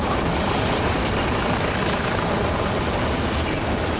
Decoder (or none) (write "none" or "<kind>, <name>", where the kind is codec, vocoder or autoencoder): none